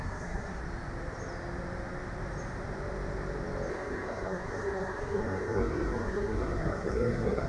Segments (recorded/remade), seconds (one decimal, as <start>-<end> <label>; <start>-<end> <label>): 0.0-0.6 remade; 0.6-3.7 recorded; 3.7-7.5 remade